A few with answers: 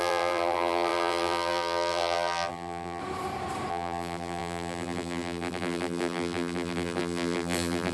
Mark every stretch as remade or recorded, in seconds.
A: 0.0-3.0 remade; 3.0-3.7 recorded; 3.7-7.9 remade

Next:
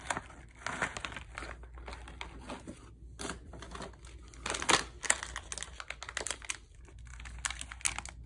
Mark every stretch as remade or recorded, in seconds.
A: 0.0-0.9 recorded; 0.9-1.4 remade; 1.4-8.3 recorded

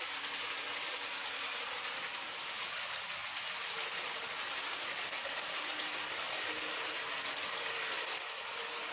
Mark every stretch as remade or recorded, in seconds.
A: 0.0-8.9 recorded

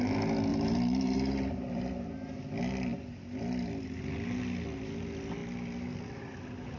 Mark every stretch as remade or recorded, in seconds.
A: 0.0-0.5 recorded; 0.5-2.0 remade; 2.0-6.8 recorded

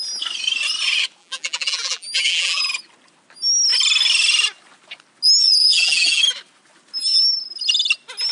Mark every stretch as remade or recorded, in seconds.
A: 0.0-1.2 recorded; 1.2-2.6 remade; 2.6-5.6 recorded; 5.6-6.2 remade; 6.2-8.3 recorded